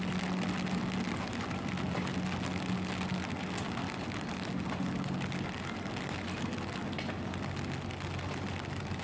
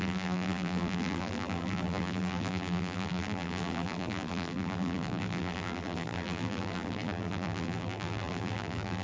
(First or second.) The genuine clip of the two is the first